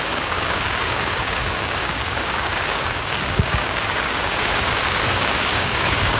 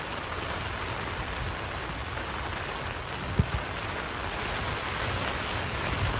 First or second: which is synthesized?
first